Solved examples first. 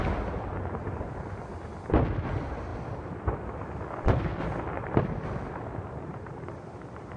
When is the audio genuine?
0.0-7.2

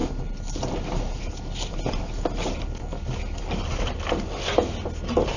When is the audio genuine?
0.0-5.4

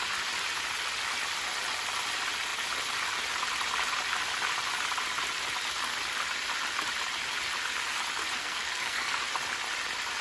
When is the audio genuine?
0.0-8.4; 9.2-10.2

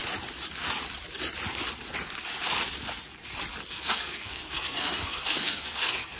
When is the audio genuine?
0.0-3.7

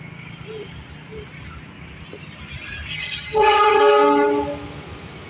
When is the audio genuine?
0.0-2.9; 3.8-5.3